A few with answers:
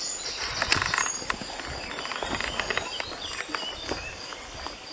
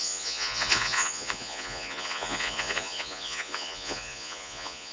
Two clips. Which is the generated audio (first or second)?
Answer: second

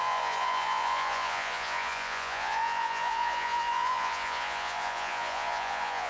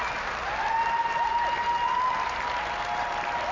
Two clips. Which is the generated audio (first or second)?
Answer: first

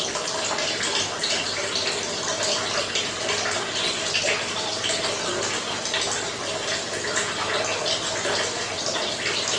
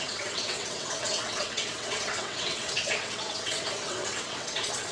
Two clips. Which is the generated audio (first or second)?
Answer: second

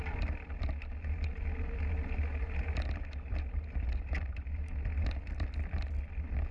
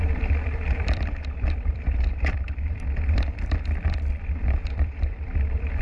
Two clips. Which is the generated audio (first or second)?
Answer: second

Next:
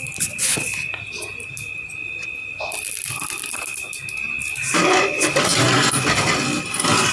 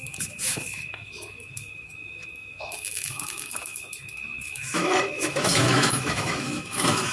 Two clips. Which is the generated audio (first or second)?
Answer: second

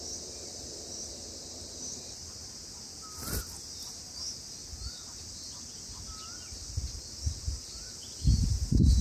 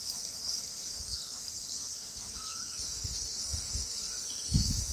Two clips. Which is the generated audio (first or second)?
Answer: second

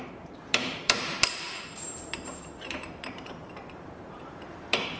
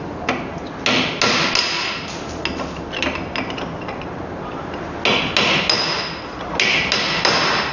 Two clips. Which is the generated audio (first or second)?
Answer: first